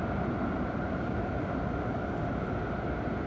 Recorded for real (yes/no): yes